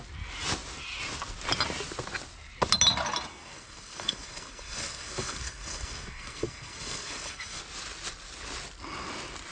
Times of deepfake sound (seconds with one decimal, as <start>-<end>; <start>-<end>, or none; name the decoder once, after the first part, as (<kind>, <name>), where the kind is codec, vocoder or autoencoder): 3.3-7.6 (codec, SNAC)